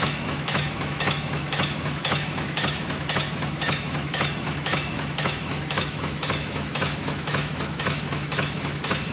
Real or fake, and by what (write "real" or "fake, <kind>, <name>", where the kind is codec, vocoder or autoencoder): fake, autoencoder, DAC-VAE